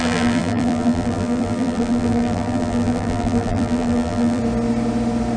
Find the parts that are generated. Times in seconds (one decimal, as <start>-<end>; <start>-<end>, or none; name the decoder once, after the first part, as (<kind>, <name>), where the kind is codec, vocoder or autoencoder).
0.0-4.4 (vocoder, BigVGAN v2)